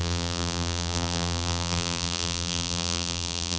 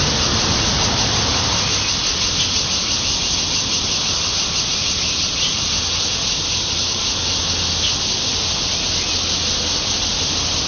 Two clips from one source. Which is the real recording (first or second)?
second